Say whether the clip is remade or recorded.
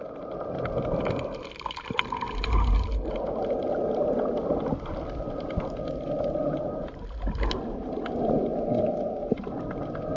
recorded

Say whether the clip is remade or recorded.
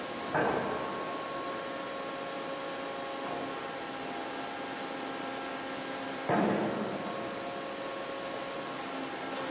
recorded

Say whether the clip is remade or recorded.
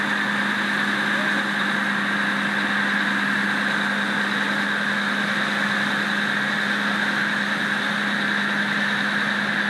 recorded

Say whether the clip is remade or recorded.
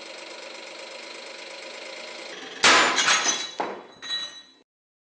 recorded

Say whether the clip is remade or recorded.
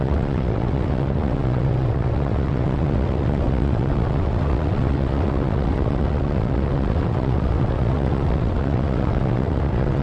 remade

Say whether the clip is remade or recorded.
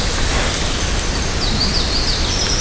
recorded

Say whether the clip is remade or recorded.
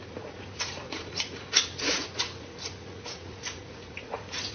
remade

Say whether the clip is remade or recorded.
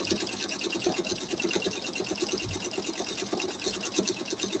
recorded